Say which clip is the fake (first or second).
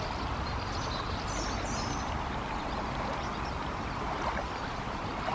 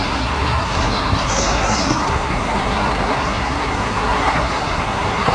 second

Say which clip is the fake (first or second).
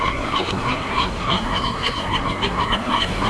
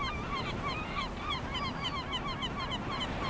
first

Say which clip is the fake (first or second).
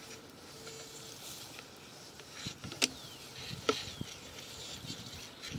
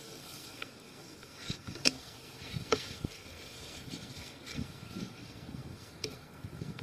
second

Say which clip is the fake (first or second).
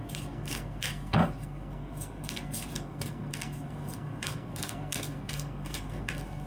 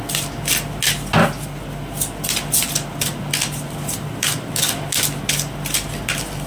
first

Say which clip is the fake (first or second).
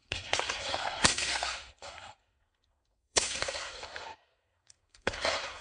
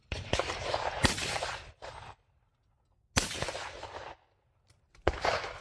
first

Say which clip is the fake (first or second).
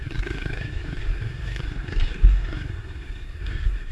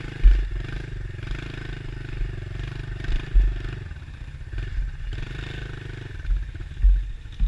first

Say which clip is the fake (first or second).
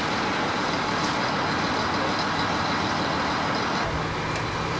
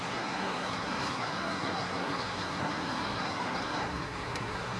second